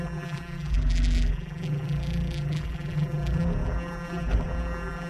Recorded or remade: remade